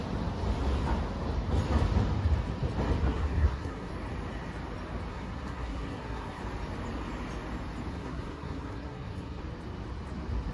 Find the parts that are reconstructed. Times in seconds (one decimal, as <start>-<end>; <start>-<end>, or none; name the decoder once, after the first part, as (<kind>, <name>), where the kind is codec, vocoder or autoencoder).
3.0-3.9 (codec, SNAC); 5.1-6.4; 7.9-9.4